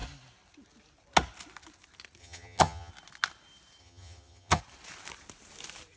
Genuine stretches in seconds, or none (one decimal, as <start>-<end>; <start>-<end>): 0.0-2.2; 2.9-3.8; 4.6-6.0